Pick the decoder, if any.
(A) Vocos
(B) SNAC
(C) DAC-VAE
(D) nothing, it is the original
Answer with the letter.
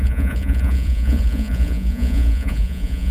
A